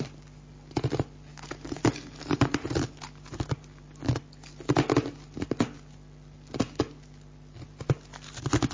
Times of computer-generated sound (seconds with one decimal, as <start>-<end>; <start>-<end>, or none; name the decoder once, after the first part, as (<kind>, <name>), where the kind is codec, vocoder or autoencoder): 1.3-1.8 (codec, DAC)

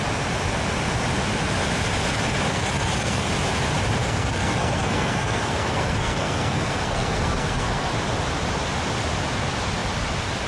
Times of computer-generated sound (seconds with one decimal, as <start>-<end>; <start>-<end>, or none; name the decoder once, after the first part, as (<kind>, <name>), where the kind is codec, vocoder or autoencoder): 2.5-3.3 (codec, SNAC); 4.0-7.9